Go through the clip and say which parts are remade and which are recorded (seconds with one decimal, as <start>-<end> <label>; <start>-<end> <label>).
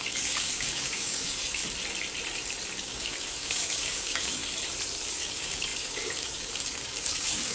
0.0-1.6 remade; 1.6-2.8 recorded; 2.8-4.4 remade; 4.4-5.1 recorded; 5.1-7.5 remade